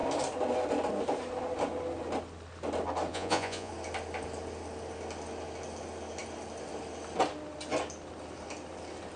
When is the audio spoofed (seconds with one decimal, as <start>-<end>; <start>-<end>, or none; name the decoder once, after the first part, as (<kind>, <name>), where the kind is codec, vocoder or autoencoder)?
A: 3.1-3.7 (vocoder, Vocos)